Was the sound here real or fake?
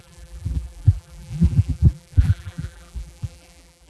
fake